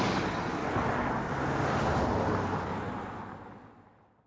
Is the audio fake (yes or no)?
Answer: no